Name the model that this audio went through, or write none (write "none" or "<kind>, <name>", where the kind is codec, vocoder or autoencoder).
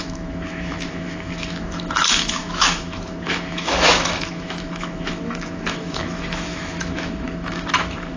autoencoder, DAC-VAE